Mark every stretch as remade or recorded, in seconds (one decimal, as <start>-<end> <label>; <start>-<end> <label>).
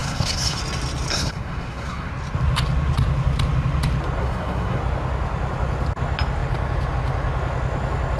0.0-0.6 remade; 0.6-1.1 recorded; 1.1-2.1 remade; 2.1-4.2 recorded; 4.2-4.8 remade; 4.8-8.2 recorded